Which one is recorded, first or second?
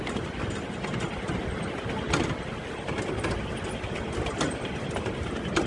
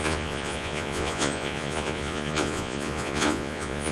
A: first